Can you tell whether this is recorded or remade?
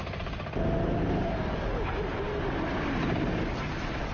recorded